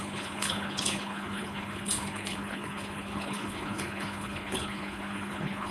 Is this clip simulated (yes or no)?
yes